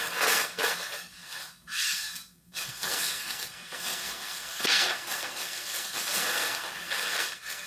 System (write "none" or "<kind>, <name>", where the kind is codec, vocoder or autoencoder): codec, SNAC